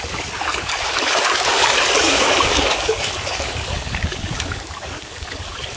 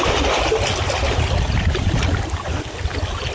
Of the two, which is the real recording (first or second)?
second